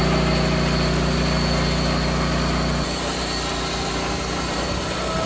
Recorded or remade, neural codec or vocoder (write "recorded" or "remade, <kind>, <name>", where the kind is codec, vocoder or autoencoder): recorded